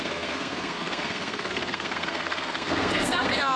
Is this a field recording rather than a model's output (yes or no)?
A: no